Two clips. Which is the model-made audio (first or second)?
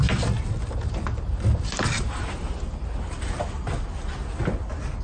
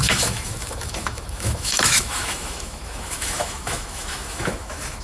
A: second